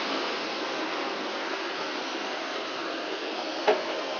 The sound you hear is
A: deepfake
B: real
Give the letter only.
A